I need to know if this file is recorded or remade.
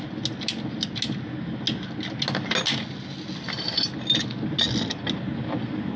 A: recorded